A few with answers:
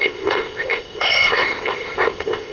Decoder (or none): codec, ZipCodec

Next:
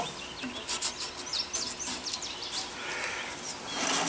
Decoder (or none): none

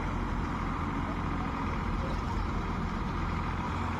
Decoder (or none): vocoder, BigVGAN v2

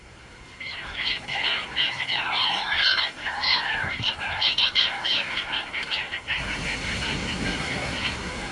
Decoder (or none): codec, SNAC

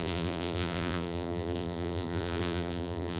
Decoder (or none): vocoder, BigVGAN v2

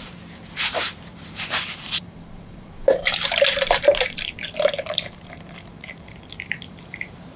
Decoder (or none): vocoder, BigVGAN v2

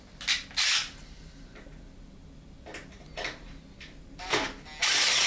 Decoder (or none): none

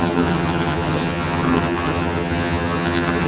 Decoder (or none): vocoder, HiFi-GAN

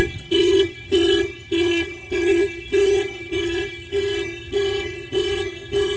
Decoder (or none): vocoder, HiFi-GAN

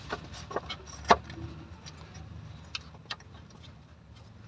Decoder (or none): none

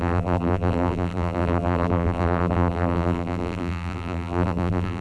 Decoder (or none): vocoder, BigVGAN v2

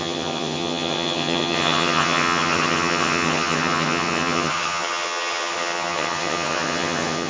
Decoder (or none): vocoder, HiFi-GAN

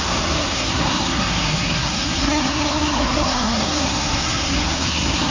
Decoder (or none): codec, SNAC